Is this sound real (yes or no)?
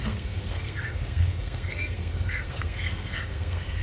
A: no